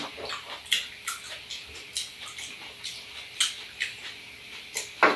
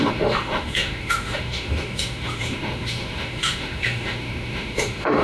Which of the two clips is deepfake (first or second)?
second